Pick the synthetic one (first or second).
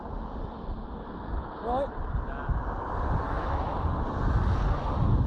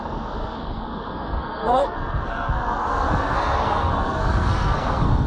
second